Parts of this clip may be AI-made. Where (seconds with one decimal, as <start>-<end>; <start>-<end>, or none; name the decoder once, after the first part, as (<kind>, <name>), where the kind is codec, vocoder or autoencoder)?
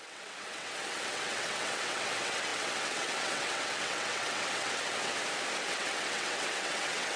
0.0-5.1 (vocoder, WaveNeXt); 5.7-7.2